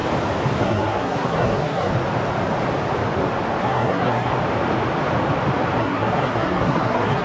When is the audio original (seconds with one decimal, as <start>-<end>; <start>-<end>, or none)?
0.0-0.6; 1.9-3.6; 4.3-5.8